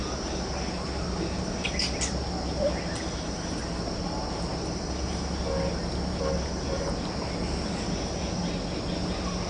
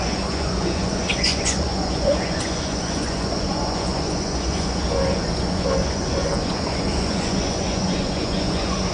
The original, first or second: first